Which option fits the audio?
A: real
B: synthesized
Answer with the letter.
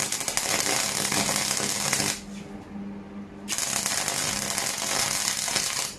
A